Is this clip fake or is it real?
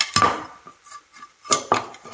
real